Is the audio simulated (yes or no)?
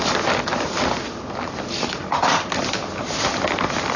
no